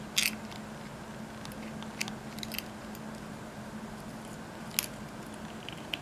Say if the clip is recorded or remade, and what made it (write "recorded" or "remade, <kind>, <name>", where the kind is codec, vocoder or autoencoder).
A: recorded